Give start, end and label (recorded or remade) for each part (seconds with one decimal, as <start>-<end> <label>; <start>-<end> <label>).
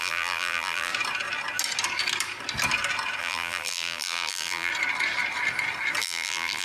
0.0-0.9 remade; 0.9-3.2 recorded; 3.2-4.7 remade; 4.7-6.0 recorded; 6.0-6.6 remade